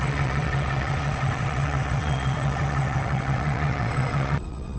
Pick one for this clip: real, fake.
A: fake